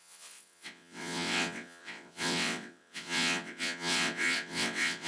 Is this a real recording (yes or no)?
no